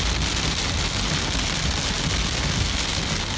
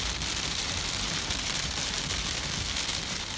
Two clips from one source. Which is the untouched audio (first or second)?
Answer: first